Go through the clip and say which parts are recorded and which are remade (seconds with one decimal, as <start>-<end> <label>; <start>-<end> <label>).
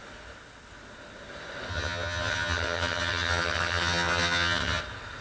0.0-1.7 recorded; 1.7-4.8 remade; 4.8-5.2 recorded